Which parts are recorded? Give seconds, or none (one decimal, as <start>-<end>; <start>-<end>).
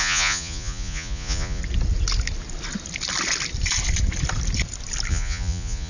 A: 1.6-5.1